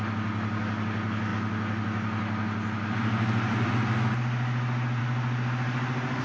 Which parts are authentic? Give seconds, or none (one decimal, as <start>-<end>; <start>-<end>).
0.0-6.2